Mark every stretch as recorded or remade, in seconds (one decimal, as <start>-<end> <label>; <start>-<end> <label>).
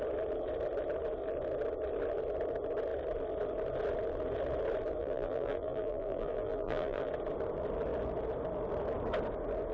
0.0-5.0 recorded; 5.0-7.1 remade; 7.1-9.7 recorded